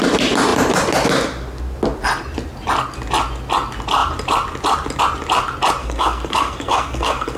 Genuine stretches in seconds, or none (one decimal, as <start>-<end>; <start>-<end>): 0.0-5.8